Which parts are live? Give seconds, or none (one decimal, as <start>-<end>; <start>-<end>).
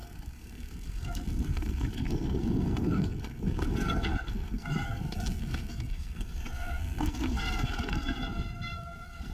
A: none